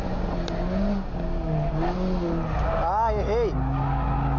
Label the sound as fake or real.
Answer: real